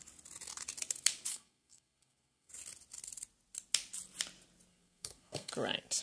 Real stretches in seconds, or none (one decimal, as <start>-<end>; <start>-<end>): 0.0-1.3; 2.5-4.7; 5.5-6.0